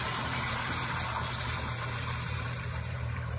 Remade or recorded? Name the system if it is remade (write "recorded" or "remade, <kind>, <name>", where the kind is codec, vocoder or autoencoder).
remade, vocoder, BigVGAN v2